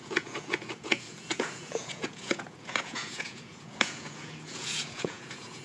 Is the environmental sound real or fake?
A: fake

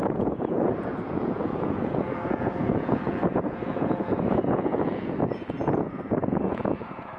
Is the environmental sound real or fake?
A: fake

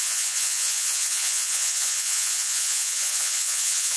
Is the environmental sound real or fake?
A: fake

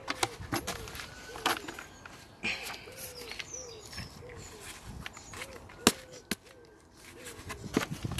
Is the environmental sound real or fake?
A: real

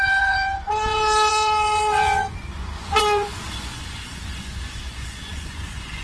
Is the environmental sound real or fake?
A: fake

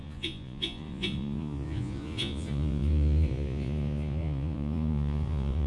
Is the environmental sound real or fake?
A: fake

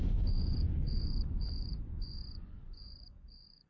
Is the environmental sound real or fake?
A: fake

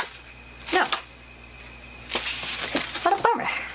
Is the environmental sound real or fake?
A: real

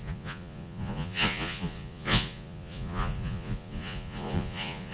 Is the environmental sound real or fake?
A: fake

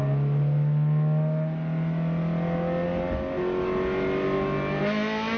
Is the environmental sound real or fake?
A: real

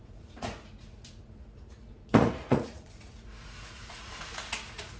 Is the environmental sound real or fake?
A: fake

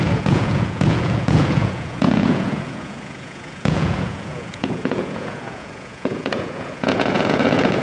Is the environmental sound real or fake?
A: fake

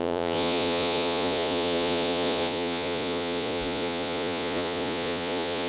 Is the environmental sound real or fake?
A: fake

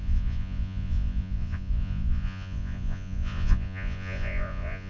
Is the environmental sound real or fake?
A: fake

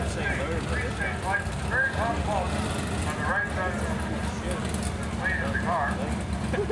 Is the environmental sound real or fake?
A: real